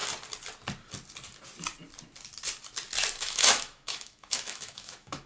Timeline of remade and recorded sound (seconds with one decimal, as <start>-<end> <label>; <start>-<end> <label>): 0.0-3.2 recorded; 3.2-5.3 remade